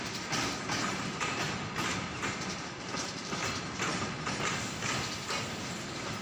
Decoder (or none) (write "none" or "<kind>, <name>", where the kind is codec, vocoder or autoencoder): none